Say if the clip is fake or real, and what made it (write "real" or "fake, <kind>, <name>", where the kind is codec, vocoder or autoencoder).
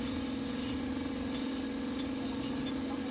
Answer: real